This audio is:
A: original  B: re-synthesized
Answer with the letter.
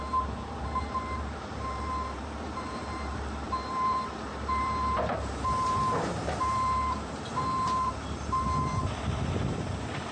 B